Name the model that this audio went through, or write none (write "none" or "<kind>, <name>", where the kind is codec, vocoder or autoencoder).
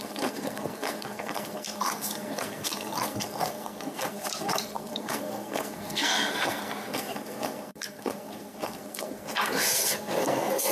codec, SNAC